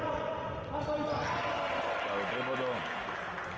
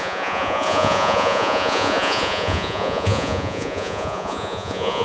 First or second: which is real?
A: first